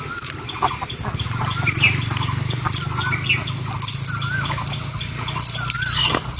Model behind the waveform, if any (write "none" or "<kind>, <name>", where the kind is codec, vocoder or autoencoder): none